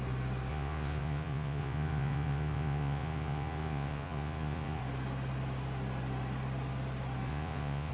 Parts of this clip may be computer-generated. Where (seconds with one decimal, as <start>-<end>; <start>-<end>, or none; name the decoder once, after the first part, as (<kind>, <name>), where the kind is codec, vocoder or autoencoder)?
0.5-4.8 (vocoder, Vocos); 7.3-7.9